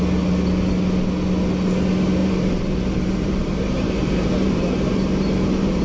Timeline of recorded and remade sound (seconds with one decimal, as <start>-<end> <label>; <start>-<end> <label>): 0.0-2.2 recorded; 2.2-5.8 remade

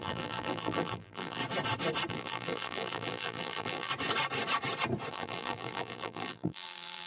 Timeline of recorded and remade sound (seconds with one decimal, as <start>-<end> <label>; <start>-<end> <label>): 0.0-1.4 remade; 1.4-2.1 recorded; 2.1-3.9 remade; 3.9-5.1 recorded; 5.1-7.1 remade

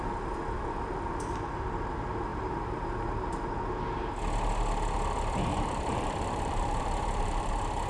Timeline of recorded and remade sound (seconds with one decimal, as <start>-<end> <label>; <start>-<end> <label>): 0.0-5.5 recorded; 5.5-7.5 remade; 7.5-7.9 recorded

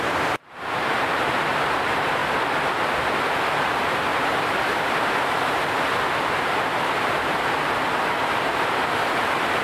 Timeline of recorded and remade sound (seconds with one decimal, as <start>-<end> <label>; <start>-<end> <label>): 0.0-2.2 remade; 2.2-2.7 recorded; 2.7-9.6 remade